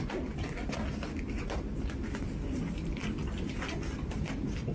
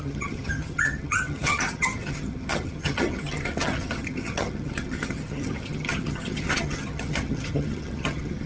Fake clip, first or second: second